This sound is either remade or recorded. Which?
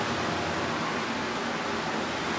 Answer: recorded